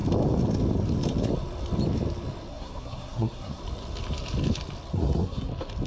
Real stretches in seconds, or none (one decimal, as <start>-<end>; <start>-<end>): 0.0-2.5; 3.6-4.9; 5.5-5.9